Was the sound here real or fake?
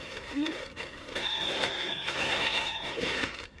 fake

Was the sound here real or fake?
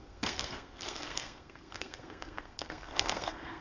fake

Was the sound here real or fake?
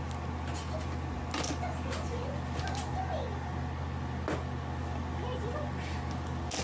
real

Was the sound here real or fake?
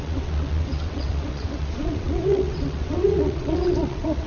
fake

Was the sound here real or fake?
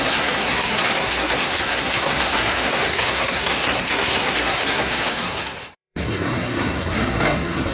fake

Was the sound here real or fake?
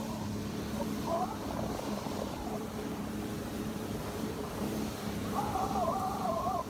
fake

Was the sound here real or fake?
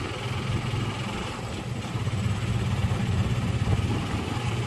real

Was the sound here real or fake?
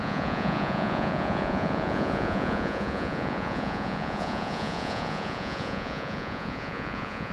fake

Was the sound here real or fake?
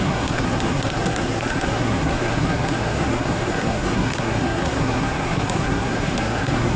fake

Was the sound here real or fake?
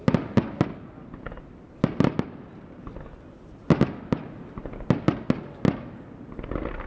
real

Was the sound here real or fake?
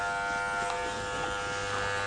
real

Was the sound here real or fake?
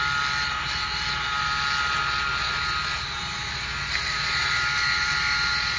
real